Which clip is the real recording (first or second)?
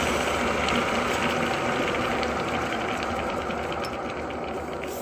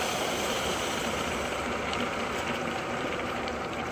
first